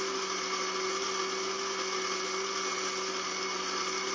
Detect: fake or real real